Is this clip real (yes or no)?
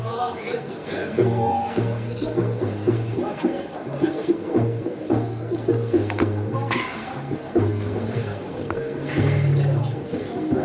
no